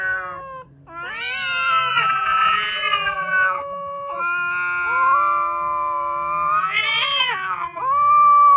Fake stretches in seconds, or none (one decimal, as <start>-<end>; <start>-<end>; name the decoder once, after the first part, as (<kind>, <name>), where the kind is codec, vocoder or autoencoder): 1.9-4.2 (vocoder, Vocos); 6.6-7.8